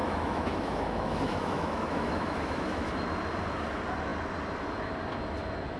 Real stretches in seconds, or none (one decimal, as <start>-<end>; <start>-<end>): 2.9-5.8